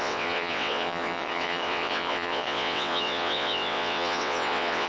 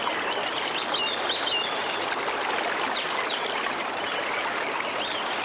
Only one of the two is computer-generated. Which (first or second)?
first